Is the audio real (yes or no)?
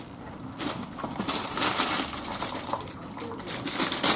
no